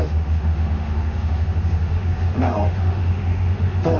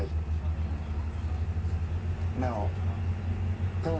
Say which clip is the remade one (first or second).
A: first